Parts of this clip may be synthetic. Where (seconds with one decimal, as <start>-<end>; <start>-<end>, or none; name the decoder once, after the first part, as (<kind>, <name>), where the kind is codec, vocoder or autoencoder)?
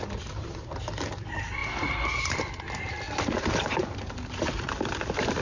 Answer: 0.0-0.6 (vocoder, BigVGAN v2); 1.1-5.4